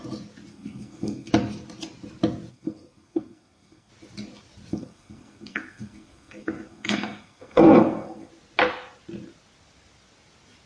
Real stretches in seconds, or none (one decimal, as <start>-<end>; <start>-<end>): 0.0-0.5; 1.3-2.5; 3.9-4.7; 8.3-10.7